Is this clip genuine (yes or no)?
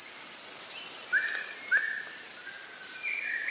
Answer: yes